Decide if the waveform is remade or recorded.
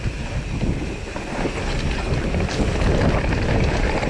recorded